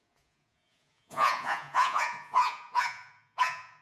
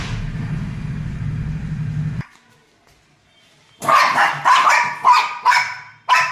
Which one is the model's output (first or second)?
first